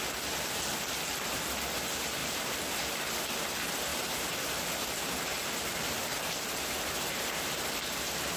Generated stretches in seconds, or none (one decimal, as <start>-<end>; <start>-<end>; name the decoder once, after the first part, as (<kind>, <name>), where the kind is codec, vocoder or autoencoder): 2.2-2.9 (vocoder, BigVGAN v2); 3.9-8.4